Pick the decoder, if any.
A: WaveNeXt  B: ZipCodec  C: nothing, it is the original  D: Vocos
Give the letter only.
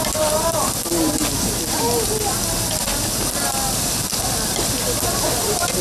C